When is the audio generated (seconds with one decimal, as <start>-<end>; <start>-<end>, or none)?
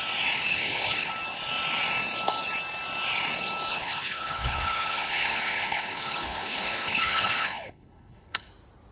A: 0.5-1.1; 3.7-8.5